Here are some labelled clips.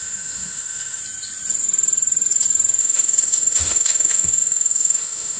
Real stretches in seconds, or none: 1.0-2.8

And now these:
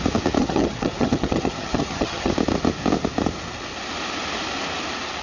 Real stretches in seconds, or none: 0.0-0.4; 2.3-5.2

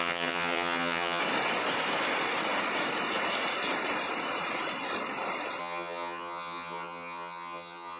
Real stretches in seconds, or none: 1.2-5.6

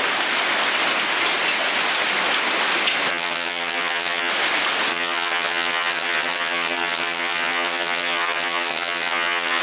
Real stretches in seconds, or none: 0.0-3.1; 4.3-4.9

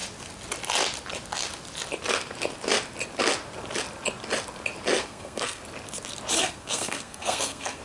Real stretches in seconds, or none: 0.0-5.0; 5.6-6.4